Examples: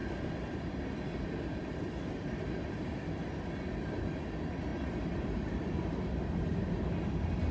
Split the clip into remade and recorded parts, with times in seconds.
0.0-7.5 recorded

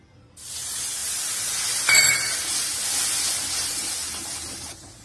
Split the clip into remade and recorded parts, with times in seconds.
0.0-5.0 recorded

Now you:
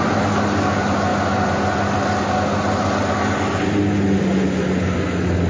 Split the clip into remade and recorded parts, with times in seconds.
0.0-5.5 recorded